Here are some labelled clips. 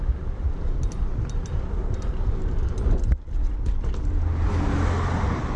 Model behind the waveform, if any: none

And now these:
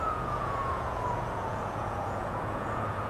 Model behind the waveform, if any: vocoder, Vocos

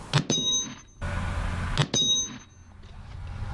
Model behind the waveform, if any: none